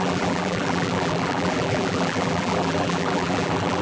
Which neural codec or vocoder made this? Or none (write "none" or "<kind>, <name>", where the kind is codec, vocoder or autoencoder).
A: vocoder, BigVGAN v2